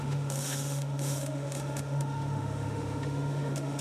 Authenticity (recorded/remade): remade